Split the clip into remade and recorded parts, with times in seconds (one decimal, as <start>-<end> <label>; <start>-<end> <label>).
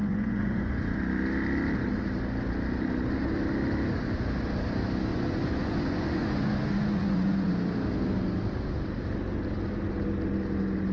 0.0-1.0 remade; 1.0-5.1 recorded; 5.1-7.5 remade; 7.5-10.9 recorded